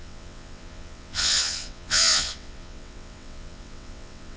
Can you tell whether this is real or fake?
fake